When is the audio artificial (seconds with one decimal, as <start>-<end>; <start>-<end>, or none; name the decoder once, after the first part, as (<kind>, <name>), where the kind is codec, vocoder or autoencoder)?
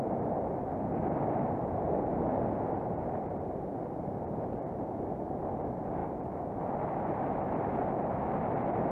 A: none